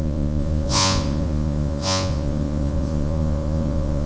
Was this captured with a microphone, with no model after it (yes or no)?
no